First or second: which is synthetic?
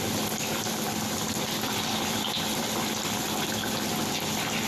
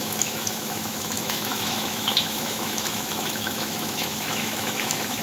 second